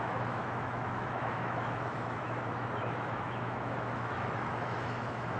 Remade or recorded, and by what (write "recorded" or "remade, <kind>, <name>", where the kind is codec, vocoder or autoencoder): remade, autoencoder, DAC-VAE